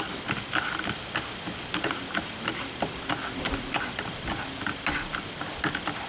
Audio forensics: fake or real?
real